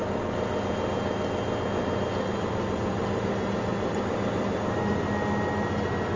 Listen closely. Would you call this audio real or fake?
real